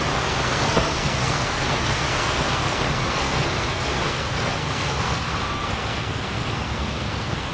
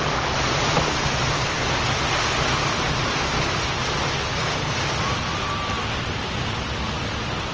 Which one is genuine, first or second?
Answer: second